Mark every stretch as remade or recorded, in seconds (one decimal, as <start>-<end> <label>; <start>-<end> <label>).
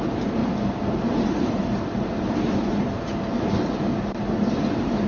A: 0.0-0.4 recorded; 0.4-3.5 remade; 3.5-5.1 recorded